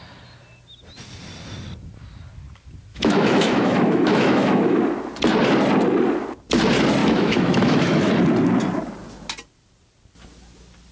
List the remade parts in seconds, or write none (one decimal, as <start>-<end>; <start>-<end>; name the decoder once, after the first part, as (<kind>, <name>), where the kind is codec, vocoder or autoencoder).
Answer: 2.9-4.8 (autoencoder, DAC-VAE); 7.0-8.1